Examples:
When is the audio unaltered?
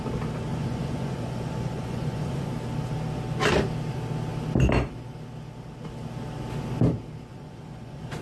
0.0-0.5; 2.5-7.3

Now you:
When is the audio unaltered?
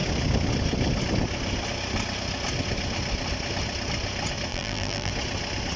0.0-4.5; 5.1-5.8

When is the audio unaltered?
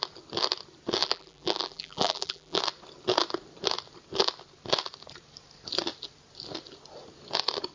0.0-1.0; 2.6-7.7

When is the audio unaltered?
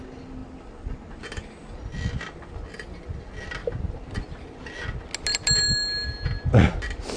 0.0-7.2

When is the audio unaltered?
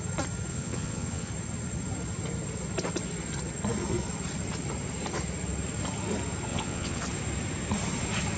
0.0-0.5; 1.3-6.5; 7.0-8.4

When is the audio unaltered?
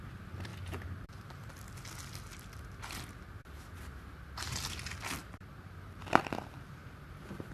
0.0-0.5; 1.5-5.2; 6.2-6.8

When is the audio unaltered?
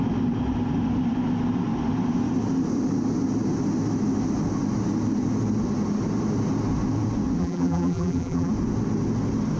0.0-7.4; 8.5-9.6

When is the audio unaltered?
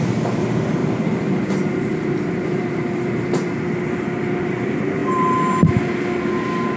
0.0-0.8; 3.0-5.0; 5.7-6.8